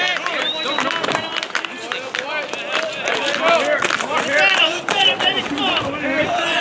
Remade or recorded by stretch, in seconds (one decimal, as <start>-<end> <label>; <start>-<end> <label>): 0.0-4.6 recorded; 4.6-5.8 remade; 5.8-6.6 recorded